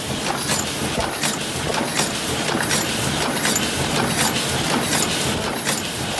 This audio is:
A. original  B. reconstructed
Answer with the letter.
A